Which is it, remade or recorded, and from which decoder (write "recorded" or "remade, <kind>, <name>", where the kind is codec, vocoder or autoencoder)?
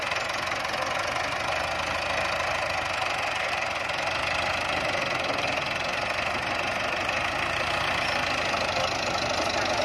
recorded